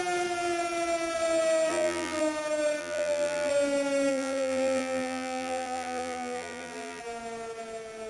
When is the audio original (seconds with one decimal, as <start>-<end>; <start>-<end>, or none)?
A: 0.0-1.7; 2.2-2.8; 3.5-4.1; 7.0-8.1